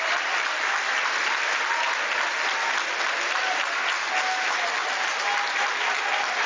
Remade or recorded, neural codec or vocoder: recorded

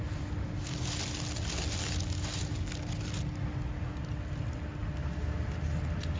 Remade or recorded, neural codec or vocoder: recorded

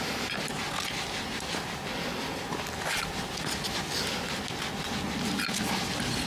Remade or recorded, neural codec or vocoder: recorded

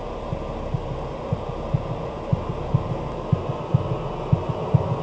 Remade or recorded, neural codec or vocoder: recorded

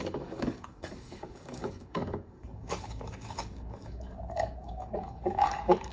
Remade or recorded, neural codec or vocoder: remade, codec, DAC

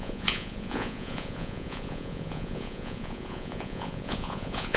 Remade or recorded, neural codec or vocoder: remade, vocoder, Vocos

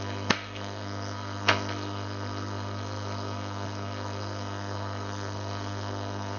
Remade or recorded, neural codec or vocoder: remade, codec, SNAC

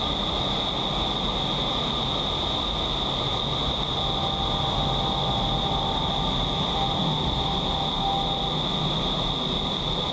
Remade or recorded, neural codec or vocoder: recorded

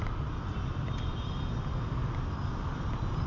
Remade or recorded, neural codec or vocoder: recorded